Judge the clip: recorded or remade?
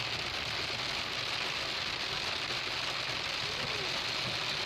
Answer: recorded